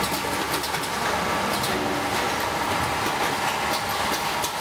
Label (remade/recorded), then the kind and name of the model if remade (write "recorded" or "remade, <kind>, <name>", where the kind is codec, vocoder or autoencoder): recorded